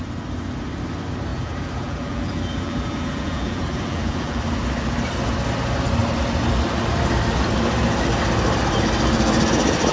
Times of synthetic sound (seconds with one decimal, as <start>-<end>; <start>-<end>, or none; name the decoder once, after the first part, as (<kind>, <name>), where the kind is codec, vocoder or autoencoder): 1.3-4.5 (vocoder, BigVGAN v2)